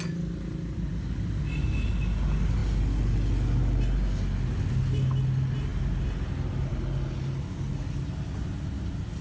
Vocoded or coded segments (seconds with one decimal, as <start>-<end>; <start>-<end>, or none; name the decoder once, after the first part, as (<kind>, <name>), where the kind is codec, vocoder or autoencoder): none